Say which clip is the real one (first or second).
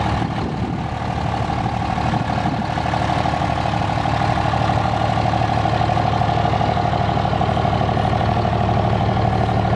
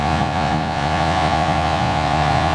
first